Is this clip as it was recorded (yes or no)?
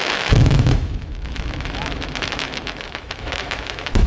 no